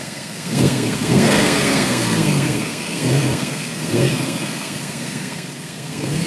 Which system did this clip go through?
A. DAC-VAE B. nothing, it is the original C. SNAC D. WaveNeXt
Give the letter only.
C